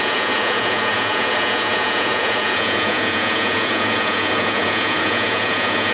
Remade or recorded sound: remade